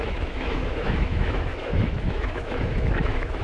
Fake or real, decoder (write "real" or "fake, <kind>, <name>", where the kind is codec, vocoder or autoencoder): fake, autoencoder, DAC-VAE